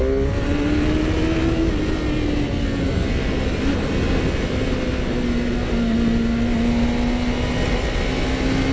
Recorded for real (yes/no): yes